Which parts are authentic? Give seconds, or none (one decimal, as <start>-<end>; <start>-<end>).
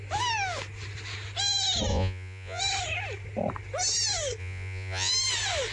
0.0-1.9; 2.6-4.4; 5.1-5.7